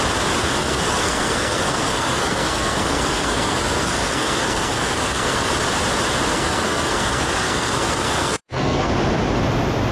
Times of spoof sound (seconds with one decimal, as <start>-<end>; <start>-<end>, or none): 0.6-5.5; 6.3-8.9